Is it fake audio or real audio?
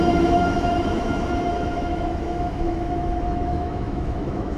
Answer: fake